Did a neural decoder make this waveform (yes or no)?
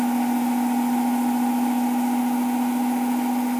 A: no